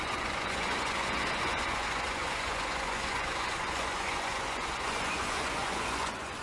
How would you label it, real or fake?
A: fake